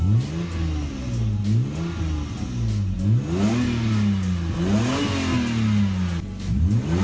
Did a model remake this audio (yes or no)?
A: no